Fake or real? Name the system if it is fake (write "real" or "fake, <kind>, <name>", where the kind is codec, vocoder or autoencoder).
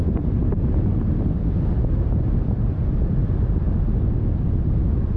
real